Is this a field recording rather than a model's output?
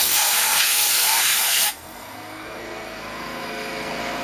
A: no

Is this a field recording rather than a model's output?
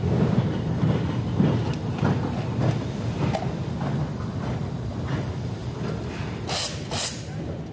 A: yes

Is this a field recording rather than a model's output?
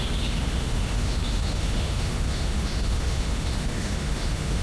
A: no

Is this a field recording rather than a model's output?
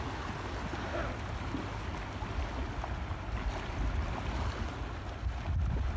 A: yes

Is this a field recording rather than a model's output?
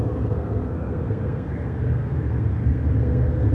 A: no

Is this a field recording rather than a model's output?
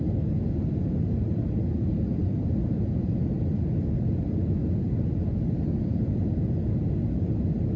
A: yes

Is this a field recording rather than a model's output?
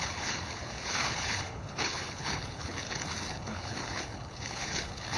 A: no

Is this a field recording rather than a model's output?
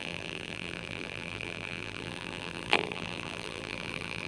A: no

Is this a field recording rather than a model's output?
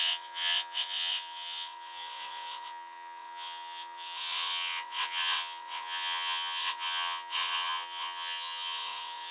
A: no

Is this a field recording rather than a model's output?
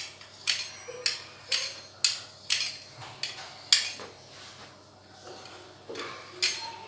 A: yes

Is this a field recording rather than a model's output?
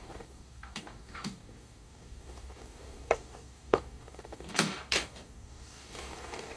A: no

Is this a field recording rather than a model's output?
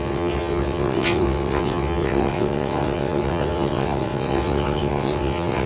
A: no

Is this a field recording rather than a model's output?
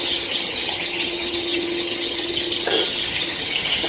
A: no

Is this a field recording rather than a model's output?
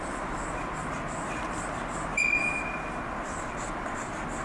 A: yes